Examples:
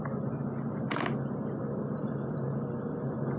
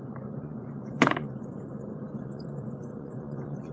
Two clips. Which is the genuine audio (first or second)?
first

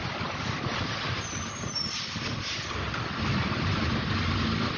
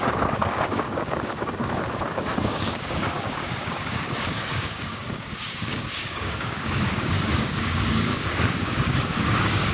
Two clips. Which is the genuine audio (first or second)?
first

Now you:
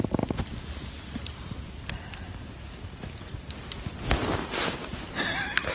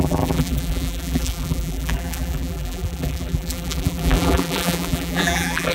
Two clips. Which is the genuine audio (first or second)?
first